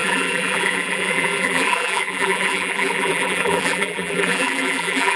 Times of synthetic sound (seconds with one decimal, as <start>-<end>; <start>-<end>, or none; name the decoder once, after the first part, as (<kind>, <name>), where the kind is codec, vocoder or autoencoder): 0.0-5.2 (vocoder, BigVGAN v2)